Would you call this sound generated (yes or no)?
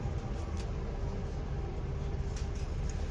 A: no